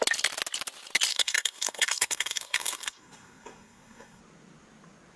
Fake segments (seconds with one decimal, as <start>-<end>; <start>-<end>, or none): 1.1-4.2